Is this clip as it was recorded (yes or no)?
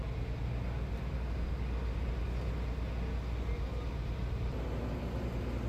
yes